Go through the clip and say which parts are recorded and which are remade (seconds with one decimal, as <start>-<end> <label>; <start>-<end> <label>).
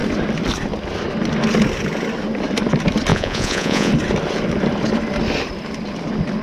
0.0-3.1 recorded; 3.1-3.9 remade; 3.9-6.4 recorded